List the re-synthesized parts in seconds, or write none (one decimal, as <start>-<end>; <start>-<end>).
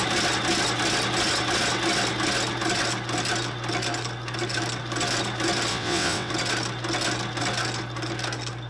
5.7-6.3